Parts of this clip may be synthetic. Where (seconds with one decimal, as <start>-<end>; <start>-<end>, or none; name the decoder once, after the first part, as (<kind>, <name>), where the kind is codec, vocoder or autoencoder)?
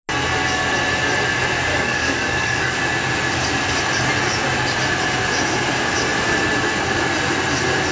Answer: 1.7-2.8 (codec, DAC)